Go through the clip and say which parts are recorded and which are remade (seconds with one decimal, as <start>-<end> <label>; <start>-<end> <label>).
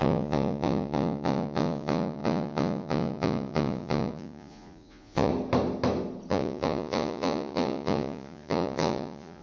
0.0-5.3 remade; 5.3-6.3 recorded; 6.3-9.4 remade